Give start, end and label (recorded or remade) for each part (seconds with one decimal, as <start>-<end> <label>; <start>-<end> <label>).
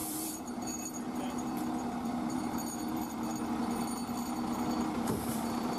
0.0-3.3 remade; 3.3-4.9 recorded; 4.9-5.8 remade